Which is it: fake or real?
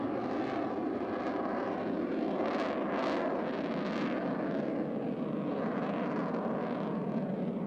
real